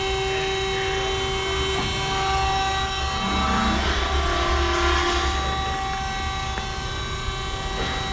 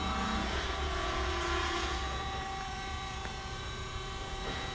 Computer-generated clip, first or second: second